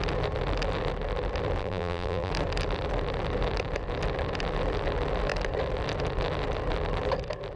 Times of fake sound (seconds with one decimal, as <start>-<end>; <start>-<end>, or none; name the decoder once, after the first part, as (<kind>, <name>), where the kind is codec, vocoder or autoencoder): 1.6-2.3 (vocoder, BigVGAN v2)